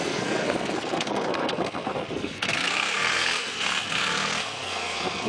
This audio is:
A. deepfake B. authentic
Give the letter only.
A